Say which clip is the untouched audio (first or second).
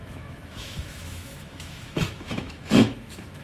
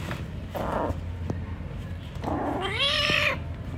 second